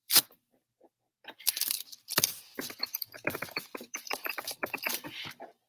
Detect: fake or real fake